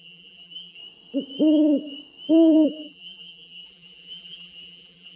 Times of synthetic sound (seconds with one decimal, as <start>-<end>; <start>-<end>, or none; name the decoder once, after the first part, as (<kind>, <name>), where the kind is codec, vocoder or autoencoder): 0.0-0.8 (vocoder, BigVGAN v2); 2.3-5.2